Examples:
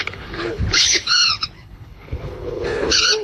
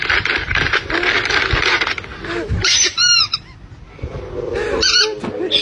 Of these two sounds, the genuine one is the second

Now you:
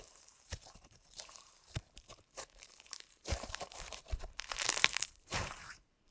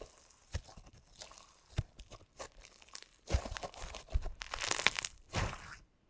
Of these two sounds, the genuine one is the second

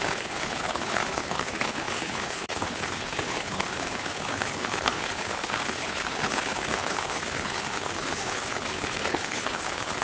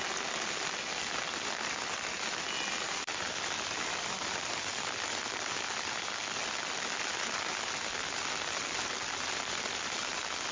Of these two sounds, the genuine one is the second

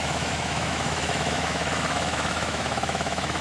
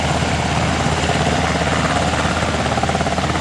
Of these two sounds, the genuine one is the second